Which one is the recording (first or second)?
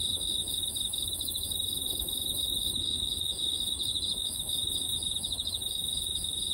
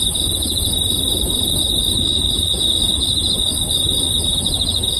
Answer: second